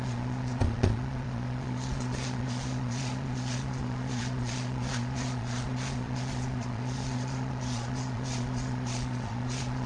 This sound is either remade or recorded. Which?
remade